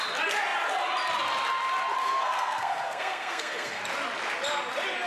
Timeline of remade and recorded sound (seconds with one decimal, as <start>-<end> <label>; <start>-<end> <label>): 0.0-2.0 recorded; 2.0-3.8 remade; 3.8-5.1 recorded